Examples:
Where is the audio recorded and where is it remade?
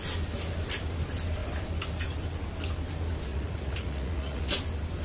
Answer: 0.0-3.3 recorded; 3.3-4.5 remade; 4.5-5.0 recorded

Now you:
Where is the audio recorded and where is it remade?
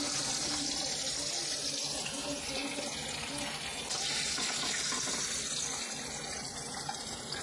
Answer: 0.0-7.4 recorded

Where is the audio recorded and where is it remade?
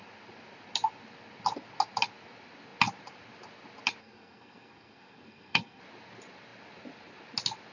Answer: 0.0-4.0 recorded; 4.0-5.8 remade; 5.8-7.7 recorded